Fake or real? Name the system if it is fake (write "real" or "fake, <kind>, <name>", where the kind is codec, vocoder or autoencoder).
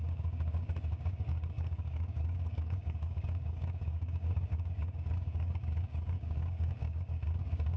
fake, codec, DAC